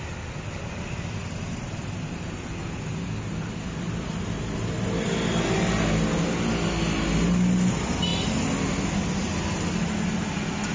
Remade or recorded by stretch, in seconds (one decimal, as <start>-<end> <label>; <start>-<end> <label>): 0.0-10.7 recorded